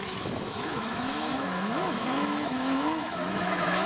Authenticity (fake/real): fake